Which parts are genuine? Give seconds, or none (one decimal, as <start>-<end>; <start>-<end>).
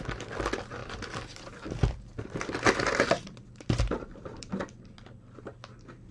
0.0-0.8; 4.5-6.1